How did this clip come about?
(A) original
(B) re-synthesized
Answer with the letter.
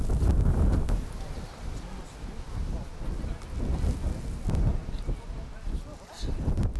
A